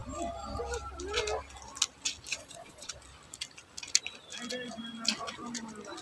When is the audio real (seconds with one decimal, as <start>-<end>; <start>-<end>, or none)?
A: 0.0-2.3; 2.9-6.0